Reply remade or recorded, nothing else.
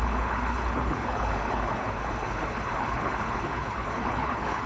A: remade